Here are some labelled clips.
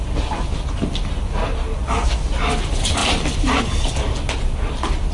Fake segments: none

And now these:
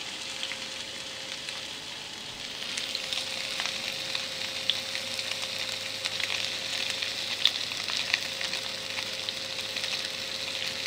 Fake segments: 0.0-2.7 (vocoder, BigVGAN v2)

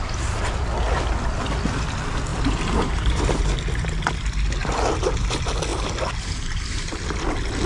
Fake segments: 2.3-3.4 (vocoder, BigVGAN v2)

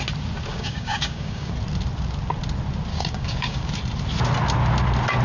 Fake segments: 0.5-1.5 (codec, DAC); 2.9-3.7

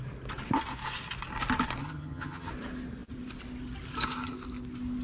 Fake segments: 1.8-2.5 (vocoder, HiFi-GAN)